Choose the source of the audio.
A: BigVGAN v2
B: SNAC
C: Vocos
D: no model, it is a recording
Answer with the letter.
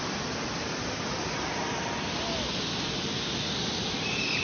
A